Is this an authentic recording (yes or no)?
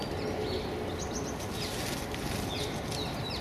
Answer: yes